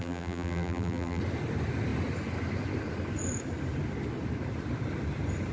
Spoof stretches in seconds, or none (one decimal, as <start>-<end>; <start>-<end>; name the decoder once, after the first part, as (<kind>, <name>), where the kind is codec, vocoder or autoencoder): 0.0-1.2 (vocoder, BigVGAN v2)